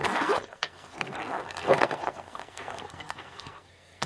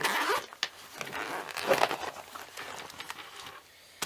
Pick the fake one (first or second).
first